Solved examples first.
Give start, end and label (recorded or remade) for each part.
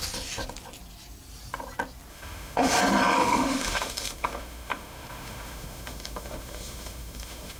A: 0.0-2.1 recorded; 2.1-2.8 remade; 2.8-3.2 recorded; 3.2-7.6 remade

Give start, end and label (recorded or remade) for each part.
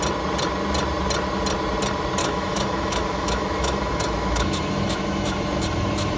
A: 0.0-2.2 recorded; 2.2-6.2 remade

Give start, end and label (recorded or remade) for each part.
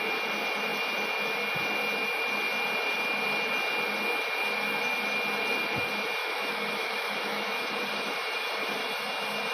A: 0.0-6.2 recorded; 6.2-7.6 remade; 7.6-9.5 recorded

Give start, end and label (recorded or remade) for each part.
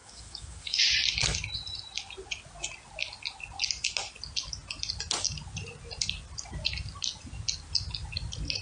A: 0.0-0.8 remade; 0.8-8.6 recorded